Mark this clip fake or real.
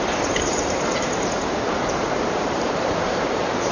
fake